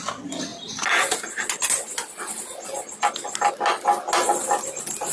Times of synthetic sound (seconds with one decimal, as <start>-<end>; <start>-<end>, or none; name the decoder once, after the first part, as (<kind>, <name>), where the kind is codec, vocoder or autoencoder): none